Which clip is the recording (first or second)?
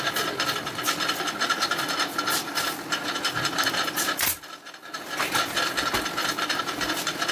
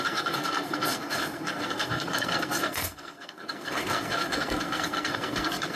first